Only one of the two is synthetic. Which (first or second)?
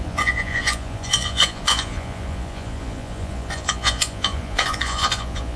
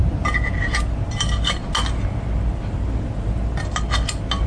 first